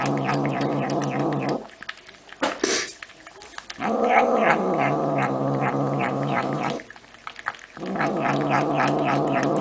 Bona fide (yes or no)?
yes